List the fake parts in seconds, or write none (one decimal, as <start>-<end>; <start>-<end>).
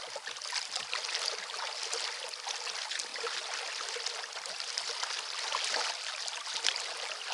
none